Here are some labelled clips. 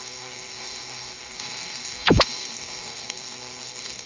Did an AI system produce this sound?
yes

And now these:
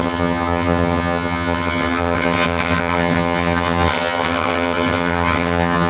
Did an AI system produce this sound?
yes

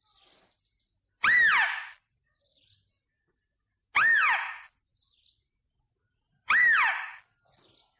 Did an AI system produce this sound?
no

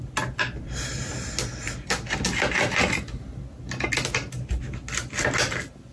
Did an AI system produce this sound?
no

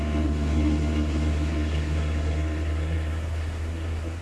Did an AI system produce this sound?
yes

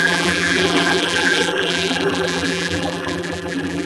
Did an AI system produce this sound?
yes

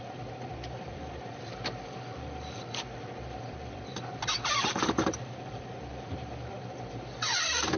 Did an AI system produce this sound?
yes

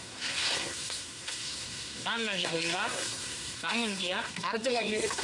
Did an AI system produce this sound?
yes